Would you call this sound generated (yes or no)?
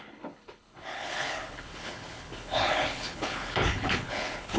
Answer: yes